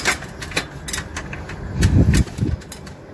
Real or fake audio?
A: real